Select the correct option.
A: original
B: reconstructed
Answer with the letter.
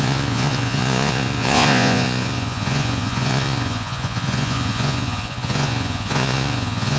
B